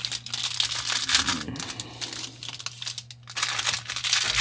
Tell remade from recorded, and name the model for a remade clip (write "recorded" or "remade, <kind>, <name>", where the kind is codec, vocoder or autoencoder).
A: recorded